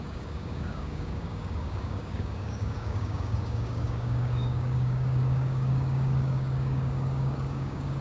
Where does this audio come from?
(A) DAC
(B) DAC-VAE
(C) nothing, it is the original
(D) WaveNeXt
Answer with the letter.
A